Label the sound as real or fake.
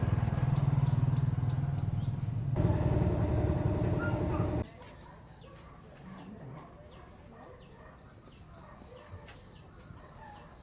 real